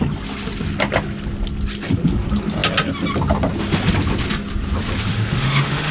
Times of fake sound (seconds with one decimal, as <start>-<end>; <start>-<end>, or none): 5.1-5.9